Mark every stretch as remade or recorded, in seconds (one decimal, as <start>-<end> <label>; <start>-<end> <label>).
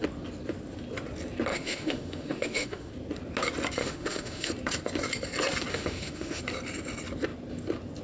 0.0-1.5 recorded; 1.5-2.9 remade; 2.9-3.8 recorded; 3.8-4.5 remade; 4.5-5.7 recorded; 5.7-6.4 remade; 6.4-8.0 recorded